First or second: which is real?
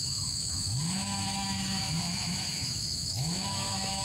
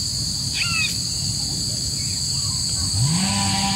second